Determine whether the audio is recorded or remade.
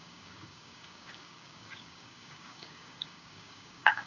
remade